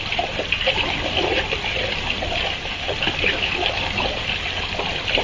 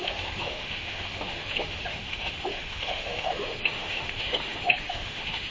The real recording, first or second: first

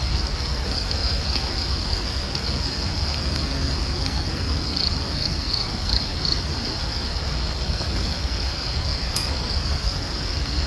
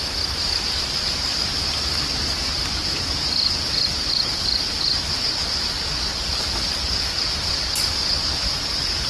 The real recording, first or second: second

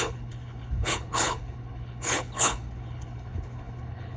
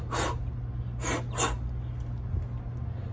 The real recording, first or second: second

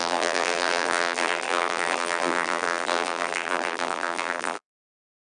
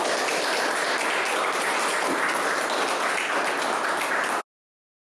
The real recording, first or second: second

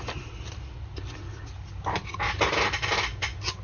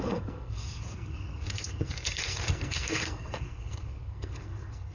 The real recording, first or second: first